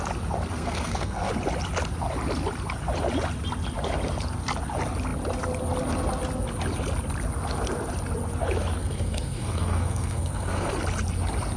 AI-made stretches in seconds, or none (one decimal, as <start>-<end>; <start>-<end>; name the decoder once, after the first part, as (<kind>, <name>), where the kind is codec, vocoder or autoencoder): 0.5-1.3 (codec, SNAC); 8.8-10.7